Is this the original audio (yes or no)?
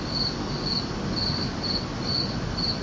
yes